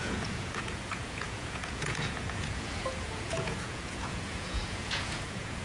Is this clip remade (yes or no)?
yes